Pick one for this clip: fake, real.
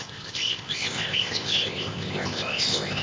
fake